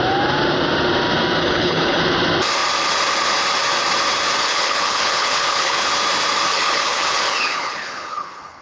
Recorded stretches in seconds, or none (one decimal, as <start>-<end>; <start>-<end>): 0.0-1.4; 2.0-4.4; 5.9-6.5